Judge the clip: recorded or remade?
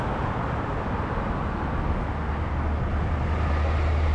recorded